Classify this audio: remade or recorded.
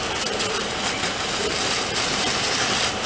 recorded